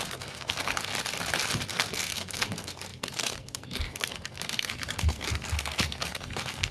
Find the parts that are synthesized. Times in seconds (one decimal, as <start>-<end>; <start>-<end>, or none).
0.0-0.9; 1.7-6.7